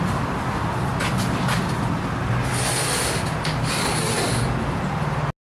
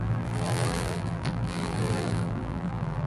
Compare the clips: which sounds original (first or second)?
first